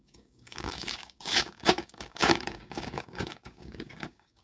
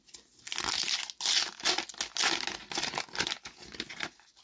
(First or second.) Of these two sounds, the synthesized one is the first